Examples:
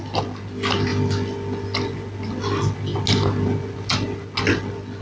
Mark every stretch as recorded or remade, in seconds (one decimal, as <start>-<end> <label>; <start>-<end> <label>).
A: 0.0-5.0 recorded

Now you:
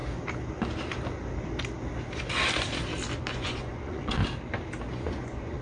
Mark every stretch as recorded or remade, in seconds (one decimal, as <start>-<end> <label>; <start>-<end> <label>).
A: 0.0-3.3 recorded; 3.3-4.2 remade; 4.2-4.9 recorded; 4.9-5.6 remade

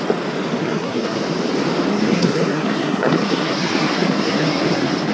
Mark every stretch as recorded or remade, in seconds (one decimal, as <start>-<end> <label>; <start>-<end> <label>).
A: 0.0-0.6 recorded; 0.6-1.2 remade; 1.2-1.9 recorded; 1.9-5.1 remade